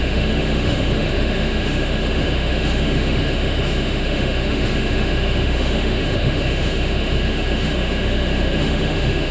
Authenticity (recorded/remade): remade